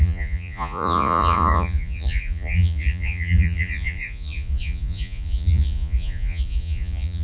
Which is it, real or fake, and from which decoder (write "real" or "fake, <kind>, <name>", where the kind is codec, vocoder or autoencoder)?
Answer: fake, vocoder, Vocos